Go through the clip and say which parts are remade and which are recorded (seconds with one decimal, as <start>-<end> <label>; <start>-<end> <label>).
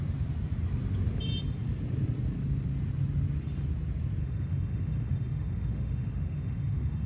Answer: 0.0-4.2 recorded; 4.2-7.1 remade